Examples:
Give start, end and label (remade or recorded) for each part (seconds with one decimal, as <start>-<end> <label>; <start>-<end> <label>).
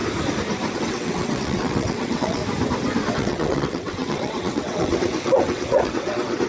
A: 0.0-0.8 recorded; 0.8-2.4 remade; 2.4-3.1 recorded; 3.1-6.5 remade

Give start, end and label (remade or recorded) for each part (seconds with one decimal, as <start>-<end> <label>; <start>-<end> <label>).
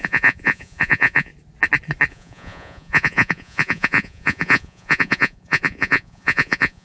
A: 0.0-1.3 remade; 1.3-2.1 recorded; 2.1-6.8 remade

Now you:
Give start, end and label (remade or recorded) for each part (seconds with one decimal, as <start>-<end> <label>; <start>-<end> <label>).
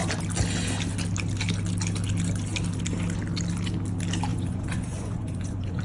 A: 0.0-4.3 recorded; 4.3-5.8 remade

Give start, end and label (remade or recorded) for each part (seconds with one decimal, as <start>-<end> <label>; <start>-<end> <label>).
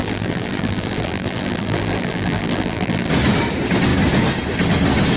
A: 0.0-3.1 remade; 3.1-5.2 recorded